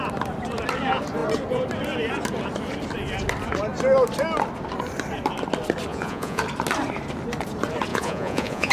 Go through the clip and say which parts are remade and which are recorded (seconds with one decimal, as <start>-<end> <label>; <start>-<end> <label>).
0.0-5.9 recorded; 5.9-6.4 remade; 6.4-7.9 recorded; 7.9-8.7 remade